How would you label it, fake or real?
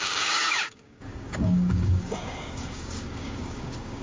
fake